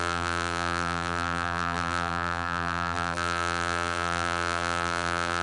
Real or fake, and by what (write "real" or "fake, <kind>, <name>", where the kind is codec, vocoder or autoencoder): fake, vocoder, BigVGAN v2